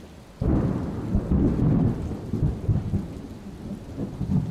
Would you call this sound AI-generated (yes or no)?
no